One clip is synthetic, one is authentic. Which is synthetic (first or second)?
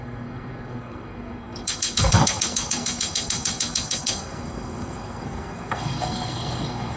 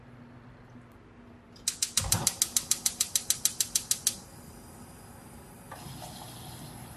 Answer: first